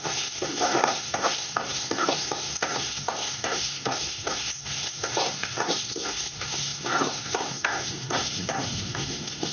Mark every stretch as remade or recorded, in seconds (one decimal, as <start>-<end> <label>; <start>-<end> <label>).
0.0-9.5 remade

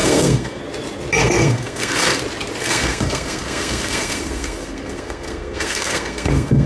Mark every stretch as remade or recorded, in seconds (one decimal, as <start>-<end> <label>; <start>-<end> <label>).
0.0-0.6 remade; 0.6-1.2 recorded; 1.2-2.2 remade; 2.2-2.6 recorded; 2.6-6.7 remade

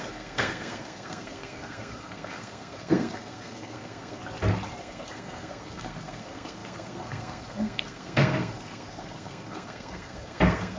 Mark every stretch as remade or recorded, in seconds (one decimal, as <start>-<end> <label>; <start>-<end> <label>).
0.0-4.2 remade; 4.2-4.8 recorded; 4.8-10.8 remade

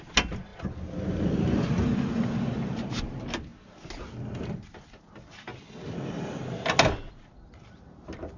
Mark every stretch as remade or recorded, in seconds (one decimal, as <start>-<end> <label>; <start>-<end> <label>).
0.0-8.4 recorded

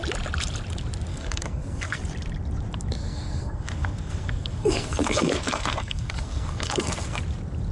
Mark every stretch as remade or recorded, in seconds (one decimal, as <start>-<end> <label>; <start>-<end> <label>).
0.0-1.1 recorded; 1.1-2.0 remade; 2.0-3.0 recorded; 3.0-7.2 remade; 7.2-7.7 recorded